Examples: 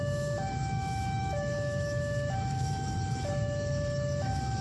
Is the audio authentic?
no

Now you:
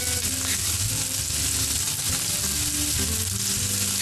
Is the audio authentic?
yes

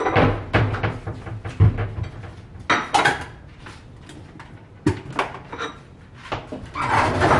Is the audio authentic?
yes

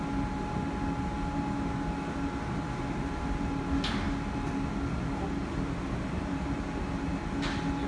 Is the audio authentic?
yes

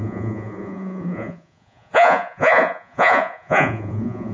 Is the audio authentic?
no